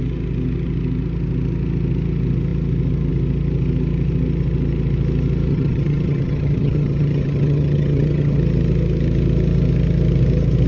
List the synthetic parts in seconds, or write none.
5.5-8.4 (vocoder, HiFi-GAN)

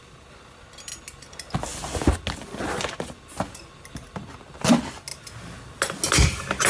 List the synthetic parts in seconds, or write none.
none